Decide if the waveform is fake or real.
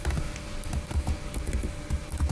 real